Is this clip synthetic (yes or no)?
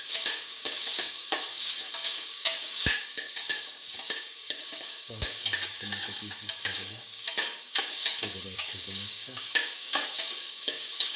yes